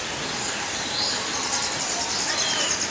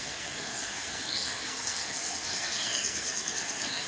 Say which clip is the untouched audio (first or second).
first